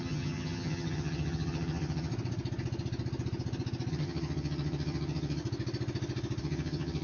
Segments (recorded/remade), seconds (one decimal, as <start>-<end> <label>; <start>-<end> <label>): 0.0-2.1 remade; 2.1-3.9 recorded; 3.9-5.4 remade; 5.4-6.4 recorded; 6.4-7.0 remade

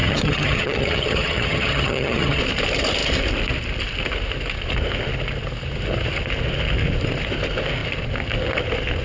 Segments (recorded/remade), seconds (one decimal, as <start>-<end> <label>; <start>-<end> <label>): 0.0-2.4 remade; 2.4-9.0 recorded

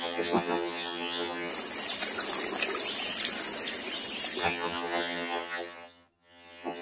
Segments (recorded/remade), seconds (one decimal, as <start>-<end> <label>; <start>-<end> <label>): 0.0-1.5 remade; 1.5-4.4 recorded; 4.4-6.8 remade

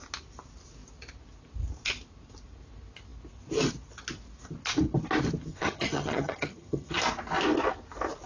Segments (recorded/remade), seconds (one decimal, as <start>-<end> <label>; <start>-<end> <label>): 0.0-5.5 recorded; 5.5-7.0 remade; 7.0-8.3 recorded

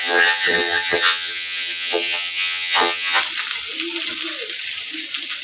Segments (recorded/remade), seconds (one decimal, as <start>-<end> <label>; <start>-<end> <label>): 0.0-3.2 remade; 3.2-5.4 recorded

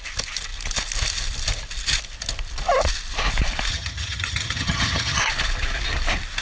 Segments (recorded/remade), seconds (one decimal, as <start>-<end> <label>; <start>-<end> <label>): 0.0-3.7 recorded; 3.7-5.2 remade; 5.2-6.4 recorded